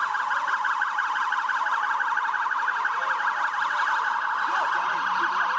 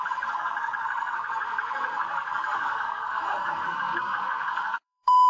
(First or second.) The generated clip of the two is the second